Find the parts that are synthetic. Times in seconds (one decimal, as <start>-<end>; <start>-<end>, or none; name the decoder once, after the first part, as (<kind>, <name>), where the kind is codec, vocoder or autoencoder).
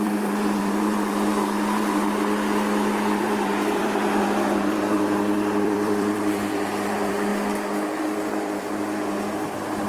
0.0-2.0 (vocoder, BigVGAN v2); 3.2-7.3; 8.0-9.9